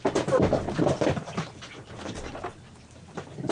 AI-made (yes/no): no